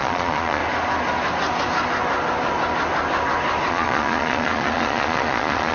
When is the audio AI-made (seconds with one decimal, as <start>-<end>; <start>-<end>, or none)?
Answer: 0.0-0.6; 3.7-5.7